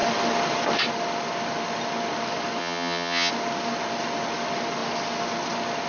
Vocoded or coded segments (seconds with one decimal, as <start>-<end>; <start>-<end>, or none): 2.6-3.3